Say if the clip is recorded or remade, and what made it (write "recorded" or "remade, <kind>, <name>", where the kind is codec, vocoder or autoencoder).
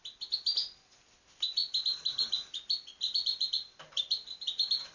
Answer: recorded